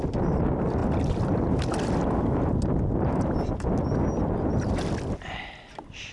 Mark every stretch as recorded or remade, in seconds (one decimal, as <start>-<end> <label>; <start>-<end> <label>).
0.0-6.1 recorded

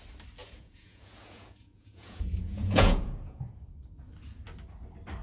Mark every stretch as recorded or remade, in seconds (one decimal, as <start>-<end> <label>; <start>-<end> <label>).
0.0-0.4 recorded; 0.4-3.5 remade; 3.5-5.2 recorded

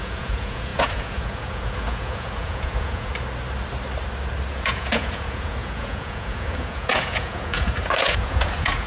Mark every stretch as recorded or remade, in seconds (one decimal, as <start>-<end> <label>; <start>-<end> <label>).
0.0-3.1 remade; 3.1-4.5 recorded; 4.5-8.9 remade

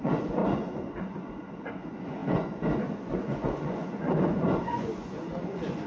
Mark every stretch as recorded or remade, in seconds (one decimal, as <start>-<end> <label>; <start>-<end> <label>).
0.0-5.9 remade

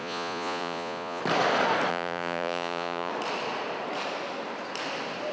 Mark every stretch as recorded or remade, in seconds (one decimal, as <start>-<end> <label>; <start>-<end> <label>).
0.0-1.2 remade; 1.2-1.9 recorded; 1.9-3.1 remade; 3.1-5.3 recorded

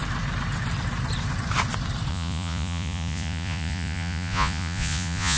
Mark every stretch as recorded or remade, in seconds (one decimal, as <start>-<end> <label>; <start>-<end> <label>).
0.0-2.1 recorded; 2.1-5.4 remade